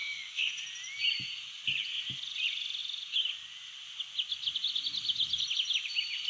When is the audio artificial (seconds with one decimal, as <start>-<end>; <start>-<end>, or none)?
0.0-0.5